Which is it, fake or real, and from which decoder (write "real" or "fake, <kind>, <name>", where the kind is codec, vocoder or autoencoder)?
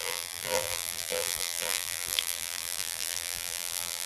fake, vocoder, BigVGAN v2